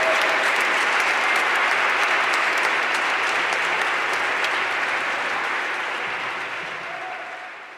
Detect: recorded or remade recorded